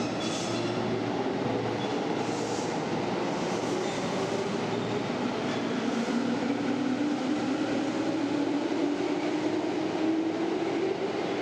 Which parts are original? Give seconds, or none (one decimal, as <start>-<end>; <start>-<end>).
0.0-11.4